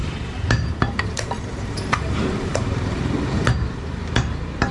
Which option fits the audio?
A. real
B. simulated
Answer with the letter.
B